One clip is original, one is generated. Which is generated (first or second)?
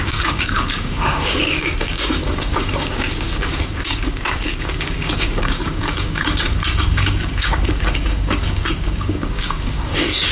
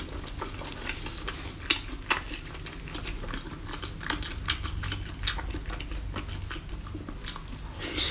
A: first